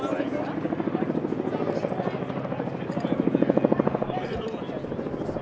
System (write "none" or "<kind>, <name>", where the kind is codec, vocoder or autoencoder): none